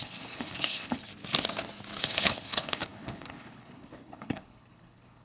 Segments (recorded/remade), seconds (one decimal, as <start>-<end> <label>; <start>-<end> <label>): 0.0-1.1 remade; 1.1-2.0 recorded; 2.0-5.2 remade